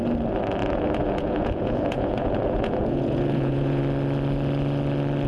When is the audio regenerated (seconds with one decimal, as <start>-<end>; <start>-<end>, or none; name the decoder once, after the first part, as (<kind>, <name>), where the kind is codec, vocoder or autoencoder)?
0.6-3.8 (vocoder, Vocos)

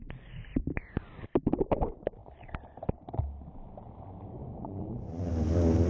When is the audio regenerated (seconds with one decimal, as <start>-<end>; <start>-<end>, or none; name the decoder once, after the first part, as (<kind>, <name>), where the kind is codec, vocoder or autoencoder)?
4.4-5.3 (vocoder, Vocos)

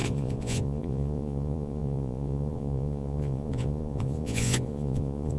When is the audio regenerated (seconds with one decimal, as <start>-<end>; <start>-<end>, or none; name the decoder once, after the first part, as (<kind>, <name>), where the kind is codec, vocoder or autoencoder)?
0.0-5.4 (vocoder, Vocos)